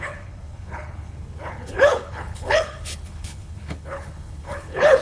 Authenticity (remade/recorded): remade